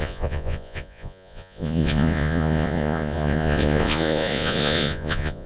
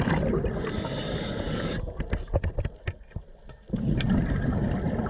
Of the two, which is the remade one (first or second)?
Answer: first